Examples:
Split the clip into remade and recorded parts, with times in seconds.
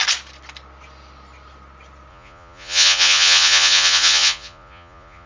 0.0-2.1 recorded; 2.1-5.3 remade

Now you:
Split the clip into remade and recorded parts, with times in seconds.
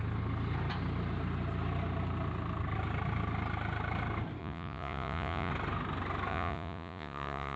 0.0-4.4 recorded; 4.4-5.5 remade; 5.5-6.3 recorded; 6.3-7.6 remade